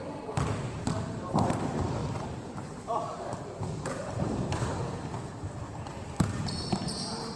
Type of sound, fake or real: fake